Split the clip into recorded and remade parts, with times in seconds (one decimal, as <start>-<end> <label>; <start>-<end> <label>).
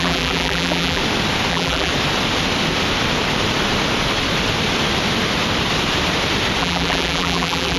0.0-1.0 remade; 1.0-1.5 recorded; 1.5-1.9 remade; 1.9-6.6 recorded; 6.6-7.8 remade